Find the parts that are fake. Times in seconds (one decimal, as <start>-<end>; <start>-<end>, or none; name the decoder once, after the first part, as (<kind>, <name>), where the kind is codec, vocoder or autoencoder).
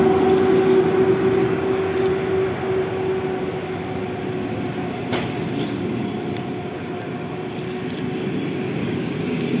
1.4-2.1 (codec, DAC); 8.8-9.6